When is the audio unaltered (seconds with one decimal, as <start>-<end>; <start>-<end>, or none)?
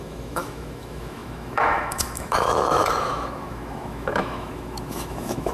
none